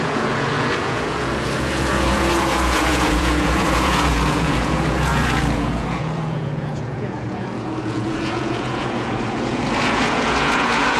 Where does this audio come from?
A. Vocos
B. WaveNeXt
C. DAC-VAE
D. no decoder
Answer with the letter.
A